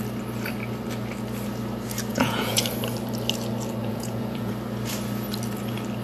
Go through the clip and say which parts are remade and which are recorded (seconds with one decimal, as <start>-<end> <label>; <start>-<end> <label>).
0.0-2.1 recorded; 2.1-2.6 remade; 2.6-3.8 recorded; 3.8-4.5 remade; 4.5-6.0 recorded